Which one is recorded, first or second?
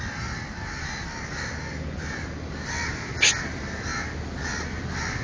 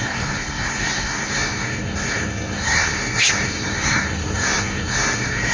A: first